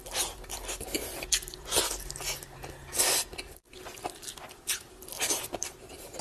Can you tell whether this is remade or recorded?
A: recorded